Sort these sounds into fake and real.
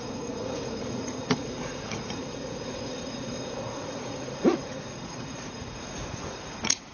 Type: fake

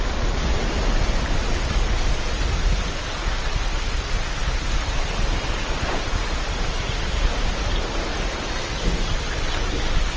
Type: real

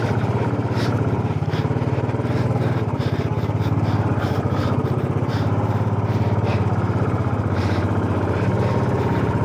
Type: fake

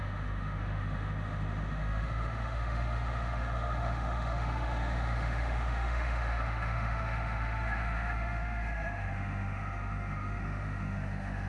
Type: fake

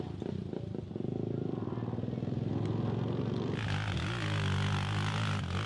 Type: real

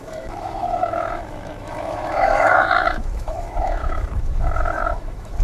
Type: fake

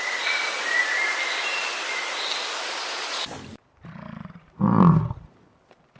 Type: real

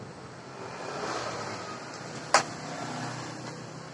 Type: real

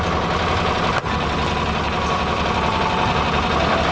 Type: real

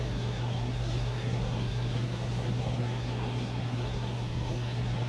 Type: fake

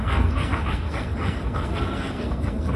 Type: fake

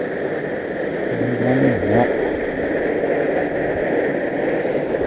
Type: real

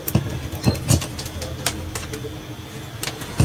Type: real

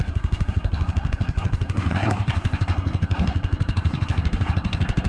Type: fake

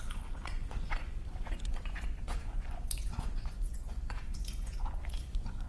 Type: fake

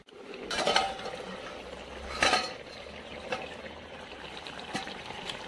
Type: real